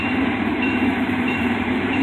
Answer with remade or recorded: remade